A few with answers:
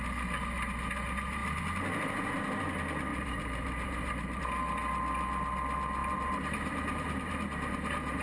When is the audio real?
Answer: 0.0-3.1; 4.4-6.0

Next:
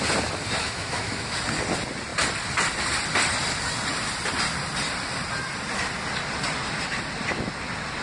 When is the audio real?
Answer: 0.0-0.6; 1.4-8.0

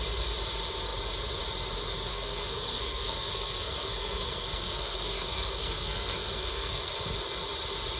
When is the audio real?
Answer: 0.0-2.1; 6.9-8.0